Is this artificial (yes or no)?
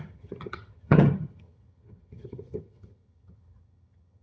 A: yes